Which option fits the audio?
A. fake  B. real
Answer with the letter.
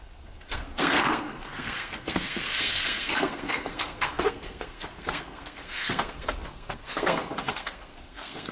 A